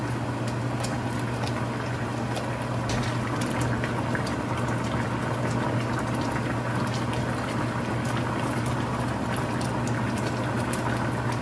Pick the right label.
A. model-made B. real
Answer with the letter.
B